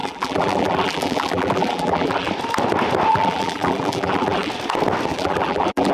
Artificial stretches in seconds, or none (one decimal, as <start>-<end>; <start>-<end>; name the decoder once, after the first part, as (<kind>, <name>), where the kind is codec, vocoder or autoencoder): 0.0-2.3 (vocoder, BigVGAN v2); 3.1-4.5; 5.1-5.9